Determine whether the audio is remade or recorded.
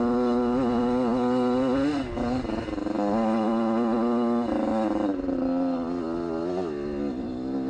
recorded